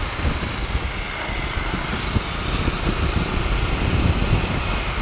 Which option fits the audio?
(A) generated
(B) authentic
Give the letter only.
B